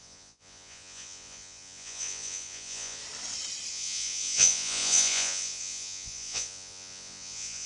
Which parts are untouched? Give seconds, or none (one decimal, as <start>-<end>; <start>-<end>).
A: 3.0-3.7